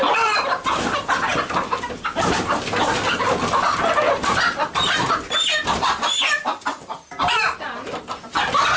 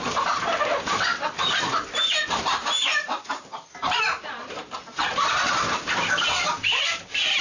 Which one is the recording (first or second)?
first